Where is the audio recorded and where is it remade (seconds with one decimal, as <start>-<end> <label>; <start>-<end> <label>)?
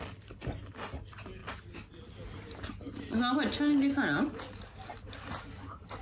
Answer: 0.0-6.0 recorded